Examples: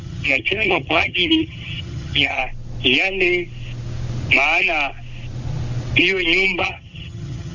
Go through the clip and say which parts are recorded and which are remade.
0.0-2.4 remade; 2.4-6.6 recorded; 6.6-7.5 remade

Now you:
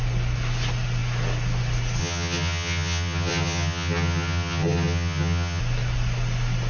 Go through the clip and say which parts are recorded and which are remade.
0.0-2.0 recorded; 2.0-5.6 remade; 5.6-6.7 recorded

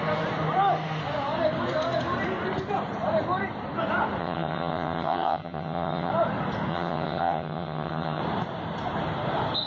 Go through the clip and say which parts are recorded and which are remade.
0.0-4.2 recorded; 4.2-6.1 remade; 6.1-6.7 recorded; 6.7-8.2 remade; 8.2-9.7 recorded

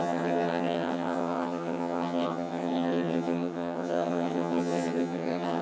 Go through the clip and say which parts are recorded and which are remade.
0.0-5.6 remade

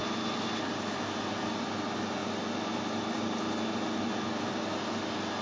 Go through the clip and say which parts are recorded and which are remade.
0.0-5.4 recorded

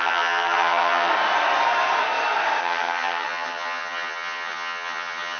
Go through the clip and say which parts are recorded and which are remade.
0.0-1.1 remade; 1.1-2.6 recorded; 2.6-5.4 remade